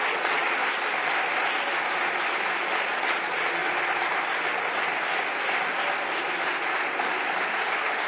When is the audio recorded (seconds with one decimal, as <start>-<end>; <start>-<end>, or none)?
0.6-2.7; 3.6-8.1